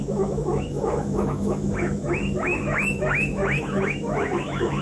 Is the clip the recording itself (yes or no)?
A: no